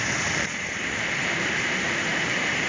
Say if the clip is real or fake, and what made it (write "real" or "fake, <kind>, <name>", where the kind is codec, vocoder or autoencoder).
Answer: fake, vocoder, BigVGAN v2